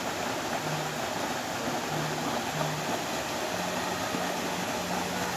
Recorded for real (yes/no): yes